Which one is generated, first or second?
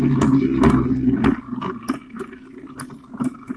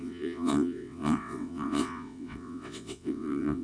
second